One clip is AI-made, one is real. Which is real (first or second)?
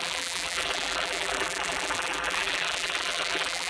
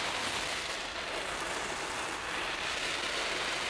second